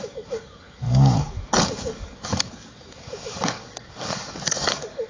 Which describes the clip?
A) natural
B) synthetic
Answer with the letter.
B